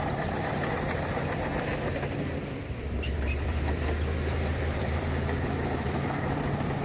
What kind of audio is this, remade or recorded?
remade